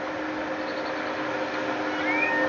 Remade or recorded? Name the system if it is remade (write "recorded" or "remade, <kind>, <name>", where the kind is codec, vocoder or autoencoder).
recorded